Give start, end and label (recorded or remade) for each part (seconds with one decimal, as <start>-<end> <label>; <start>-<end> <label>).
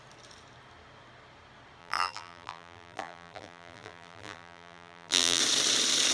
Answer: 0.0-1.8 recorded; 1.8-5.4 remade; 5.4-6.1 recorded